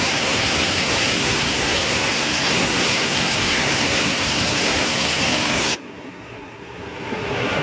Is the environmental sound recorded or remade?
remade